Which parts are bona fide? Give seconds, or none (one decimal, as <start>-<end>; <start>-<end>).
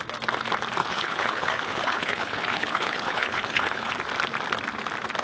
0.0-0.8; 3.9-5.2